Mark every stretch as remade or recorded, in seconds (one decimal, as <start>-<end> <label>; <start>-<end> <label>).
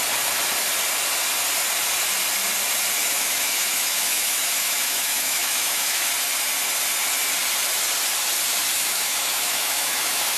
0.0-3.0 recorded; 3.0-6.1 remade; 6.1-8.7 recorded; 8.7-10.4 remade